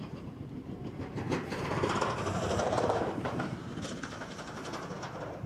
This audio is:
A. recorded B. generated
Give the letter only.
B